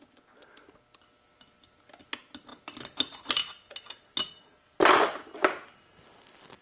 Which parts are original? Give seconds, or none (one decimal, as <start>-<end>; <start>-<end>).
0.0-6.6